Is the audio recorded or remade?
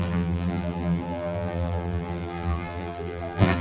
remade